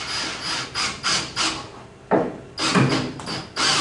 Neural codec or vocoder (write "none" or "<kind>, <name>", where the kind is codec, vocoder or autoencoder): none